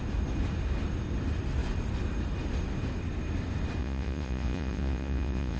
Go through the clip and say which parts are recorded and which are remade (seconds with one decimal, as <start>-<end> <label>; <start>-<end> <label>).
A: 0.0-3.8 recorded; 3.8-5.6 remade